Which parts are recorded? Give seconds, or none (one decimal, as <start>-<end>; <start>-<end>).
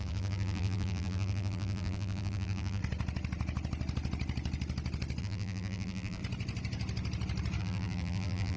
2.8-5.2; 6.2-7.6